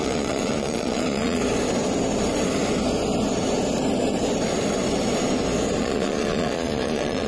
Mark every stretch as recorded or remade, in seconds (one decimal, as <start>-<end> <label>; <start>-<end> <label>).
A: 0.0-1.4 remade; 1.4-5.8 recorded; 5.8-7.3 remade